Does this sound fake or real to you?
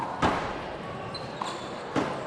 fake